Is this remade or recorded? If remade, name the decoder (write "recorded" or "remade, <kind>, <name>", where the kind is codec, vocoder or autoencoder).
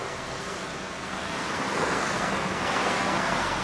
remade, codec, SNAC